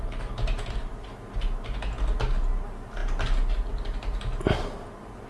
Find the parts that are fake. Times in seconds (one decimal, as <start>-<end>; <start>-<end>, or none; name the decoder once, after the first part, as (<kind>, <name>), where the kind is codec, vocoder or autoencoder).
none